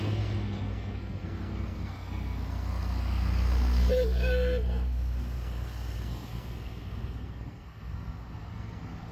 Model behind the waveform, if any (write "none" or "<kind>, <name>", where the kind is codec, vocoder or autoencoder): codec, SNAC